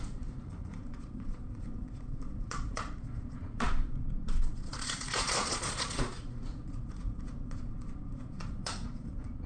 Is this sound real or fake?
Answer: fake